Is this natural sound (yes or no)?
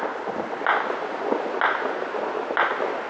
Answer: yes